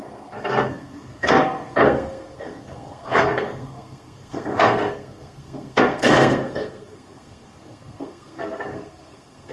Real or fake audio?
fake